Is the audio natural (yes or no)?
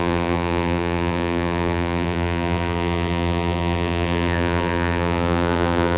no